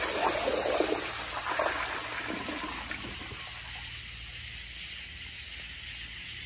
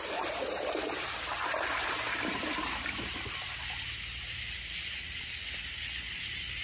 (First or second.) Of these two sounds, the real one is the first